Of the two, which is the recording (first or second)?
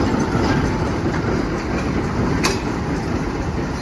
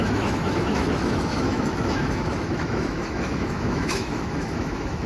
first